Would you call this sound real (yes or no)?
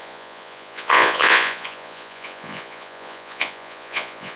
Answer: no